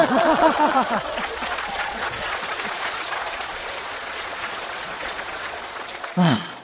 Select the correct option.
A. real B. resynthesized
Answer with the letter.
B